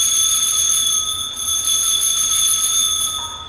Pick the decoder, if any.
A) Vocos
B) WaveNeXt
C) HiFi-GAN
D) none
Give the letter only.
D